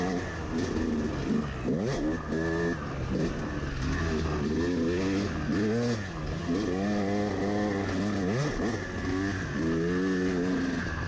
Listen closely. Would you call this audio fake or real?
real